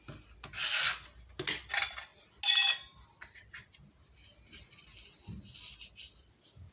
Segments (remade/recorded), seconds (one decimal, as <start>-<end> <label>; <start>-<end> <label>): 0.0-6.7 recorded